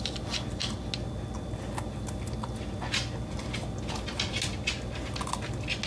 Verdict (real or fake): real